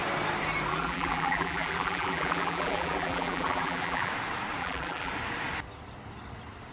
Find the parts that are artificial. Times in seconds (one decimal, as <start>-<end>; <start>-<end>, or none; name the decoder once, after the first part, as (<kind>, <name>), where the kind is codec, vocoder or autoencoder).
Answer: 0.7-4.1 (vocoder, BigVGAN v2); 4.6-5.1